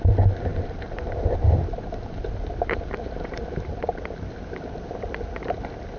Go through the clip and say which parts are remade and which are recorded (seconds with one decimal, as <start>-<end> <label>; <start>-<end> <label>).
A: 0.0-0.5 recorded; 0.5-4.0 remade; 4.0-6.0 recorded